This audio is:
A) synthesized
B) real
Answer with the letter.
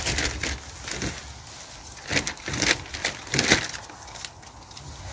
B